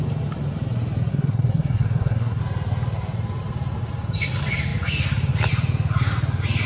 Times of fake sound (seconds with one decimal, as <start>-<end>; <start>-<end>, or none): 1.1-2.4